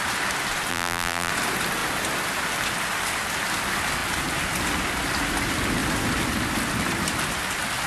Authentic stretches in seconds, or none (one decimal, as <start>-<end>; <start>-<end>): 0.0-0.7; 1.3-7.9